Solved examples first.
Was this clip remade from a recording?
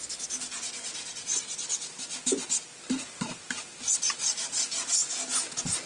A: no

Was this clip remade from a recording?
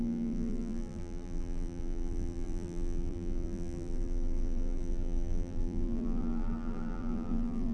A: yes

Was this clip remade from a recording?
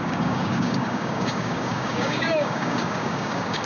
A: yes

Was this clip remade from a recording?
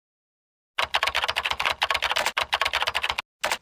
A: no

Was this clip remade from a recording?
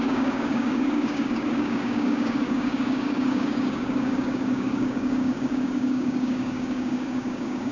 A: yes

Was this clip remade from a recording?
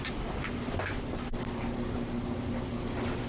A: no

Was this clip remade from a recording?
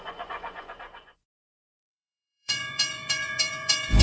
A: yes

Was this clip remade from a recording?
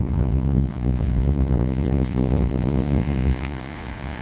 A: yes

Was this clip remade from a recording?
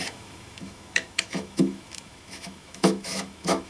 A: yes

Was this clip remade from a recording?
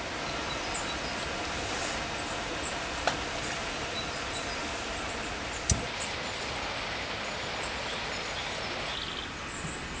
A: no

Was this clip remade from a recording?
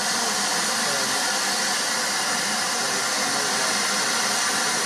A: no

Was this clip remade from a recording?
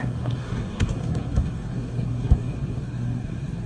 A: yes